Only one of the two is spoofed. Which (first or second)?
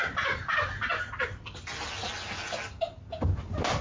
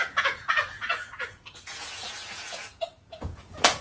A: second